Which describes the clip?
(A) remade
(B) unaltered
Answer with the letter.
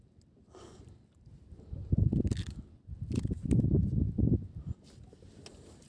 B